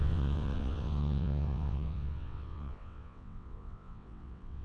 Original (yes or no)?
no